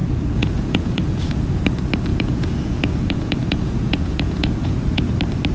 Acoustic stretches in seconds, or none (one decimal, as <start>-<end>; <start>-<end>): 1.6-2.1; 5.1-5.5